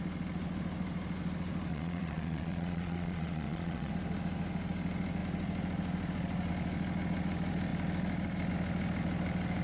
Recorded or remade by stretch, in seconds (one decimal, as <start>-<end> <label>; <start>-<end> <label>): 0.0-1.7 recorded; 1.7-3.9 remade; 3.9-9.6 recorded